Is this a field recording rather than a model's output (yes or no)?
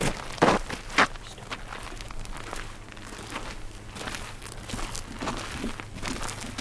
yes